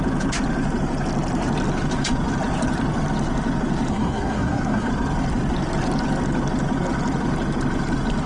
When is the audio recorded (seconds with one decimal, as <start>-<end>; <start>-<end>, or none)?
0.0-3.9; 4.9-8.3

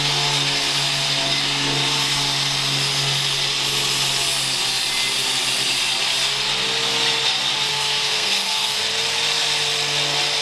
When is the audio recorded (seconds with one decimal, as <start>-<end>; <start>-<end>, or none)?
0.0-7.7; 8.8-10.4

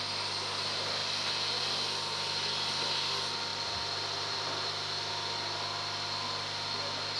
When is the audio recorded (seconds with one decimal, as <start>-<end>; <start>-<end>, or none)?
0.0-3.5; 5.1-7.2

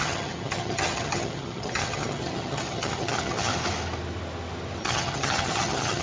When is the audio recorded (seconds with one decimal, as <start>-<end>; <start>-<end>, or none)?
3.5-4.8

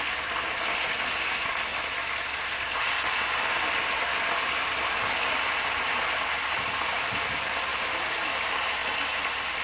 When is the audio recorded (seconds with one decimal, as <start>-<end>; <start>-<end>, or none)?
1.7-2.8; 8.8-9.6

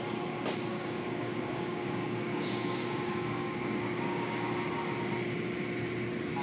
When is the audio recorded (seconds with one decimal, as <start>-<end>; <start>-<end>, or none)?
0.0-0.7; 4.5-6.4